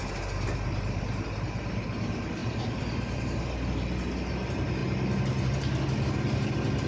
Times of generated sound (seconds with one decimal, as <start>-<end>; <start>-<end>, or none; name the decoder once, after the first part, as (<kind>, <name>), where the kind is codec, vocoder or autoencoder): 2.4-3.2 (vocoder, BigVGAN v2)